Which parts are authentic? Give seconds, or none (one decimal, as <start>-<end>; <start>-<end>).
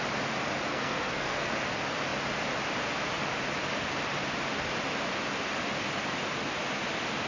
0.0-0.7; 1.5-7.3